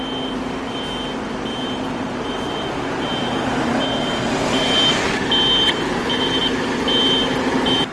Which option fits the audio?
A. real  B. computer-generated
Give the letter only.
A